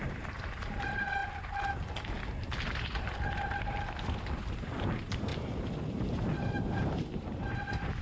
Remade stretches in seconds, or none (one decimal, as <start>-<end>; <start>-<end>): 0.0-1.2; 3.6-5.3; 5.9-8.0